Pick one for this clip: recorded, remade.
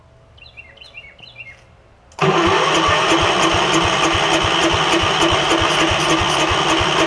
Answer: recorded